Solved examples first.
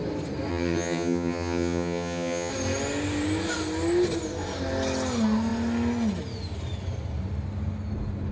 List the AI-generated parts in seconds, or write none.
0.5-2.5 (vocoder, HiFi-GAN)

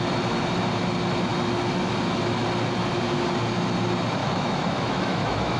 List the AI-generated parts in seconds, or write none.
4.2-5.6 (autoencoder, DAC-VAE)

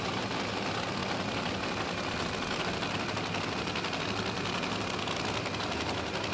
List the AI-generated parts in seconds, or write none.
none